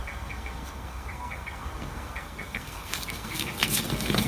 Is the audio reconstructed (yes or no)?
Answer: yes